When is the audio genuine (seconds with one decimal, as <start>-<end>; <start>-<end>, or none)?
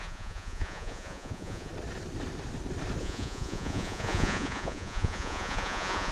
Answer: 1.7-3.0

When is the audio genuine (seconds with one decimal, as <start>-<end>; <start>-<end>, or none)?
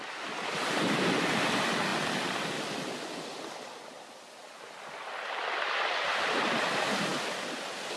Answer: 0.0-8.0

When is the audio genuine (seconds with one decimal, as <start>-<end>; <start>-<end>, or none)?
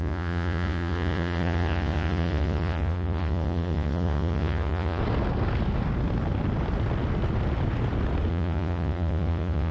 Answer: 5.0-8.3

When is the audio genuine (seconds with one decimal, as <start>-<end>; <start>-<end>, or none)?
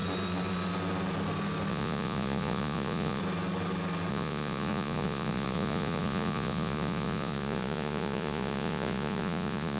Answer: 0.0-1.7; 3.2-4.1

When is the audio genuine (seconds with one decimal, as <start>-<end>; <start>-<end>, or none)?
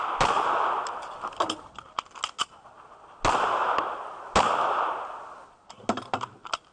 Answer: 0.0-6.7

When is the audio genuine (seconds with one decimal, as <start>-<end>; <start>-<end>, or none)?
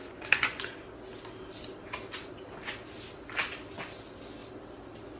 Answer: 0.6-5.2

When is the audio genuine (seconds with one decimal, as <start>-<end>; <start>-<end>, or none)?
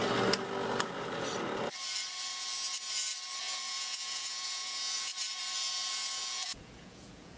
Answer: 0.0-3.4; 5.1-5.9